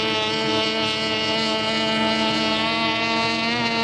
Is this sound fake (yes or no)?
no